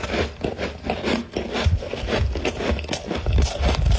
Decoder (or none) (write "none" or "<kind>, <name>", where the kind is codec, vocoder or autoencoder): none